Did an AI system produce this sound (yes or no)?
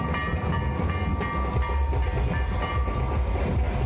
no